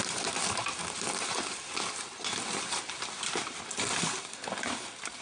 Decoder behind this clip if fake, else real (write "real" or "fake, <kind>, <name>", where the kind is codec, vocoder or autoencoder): real